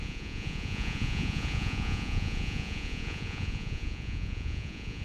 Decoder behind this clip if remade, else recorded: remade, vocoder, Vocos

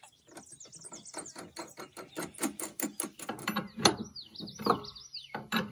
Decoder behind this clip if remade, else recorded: recorded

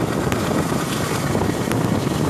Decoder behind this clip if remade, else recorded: recorded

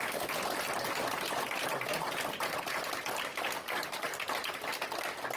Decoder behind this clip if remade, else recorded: recorded